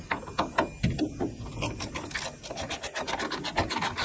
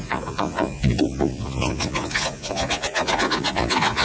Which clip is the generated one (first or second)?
second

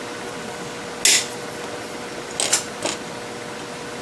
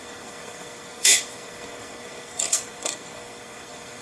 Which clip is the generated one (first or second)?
second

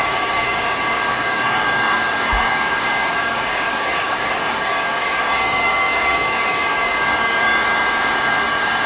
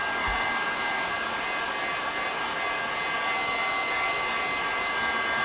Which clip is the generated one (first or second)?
first